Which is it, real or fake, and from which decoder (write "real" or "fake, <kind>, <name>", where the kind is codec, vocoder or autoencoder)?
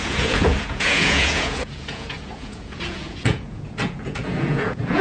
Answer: fake, vocoder, Vocos